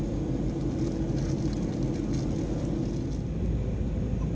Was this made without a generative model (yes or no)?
yes